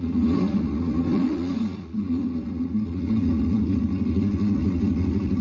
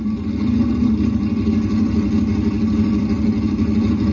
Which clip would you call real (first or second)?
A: second